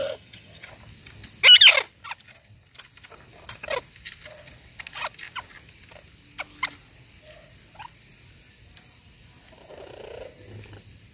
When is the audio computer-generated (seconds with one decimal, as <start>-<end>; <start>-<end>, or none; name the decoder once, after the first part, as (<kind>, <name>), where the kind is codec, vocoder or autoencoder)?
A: 0.0-0.7 (vocoder, HiFi-GAN)